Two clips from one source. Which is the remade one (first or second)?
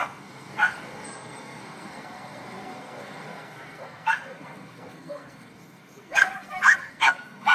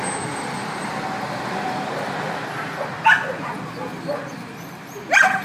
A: first